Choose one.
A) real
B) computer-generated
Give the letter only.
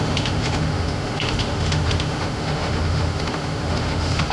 B